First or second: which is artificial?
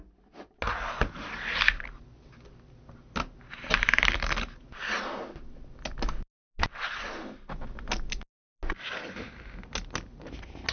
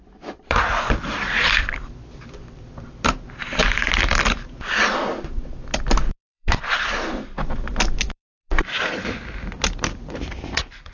second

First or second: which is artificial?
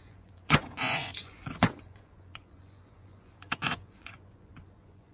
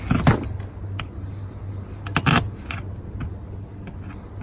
first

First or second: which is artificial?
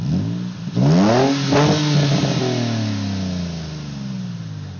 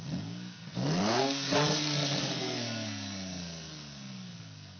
second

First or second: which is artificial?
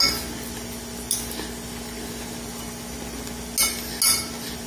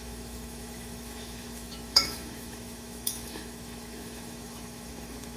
second